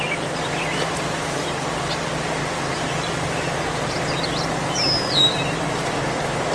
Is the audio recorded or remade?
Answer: recorded